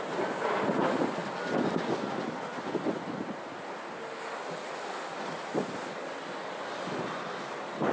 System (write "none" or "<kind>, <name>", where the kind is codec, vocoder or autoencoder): none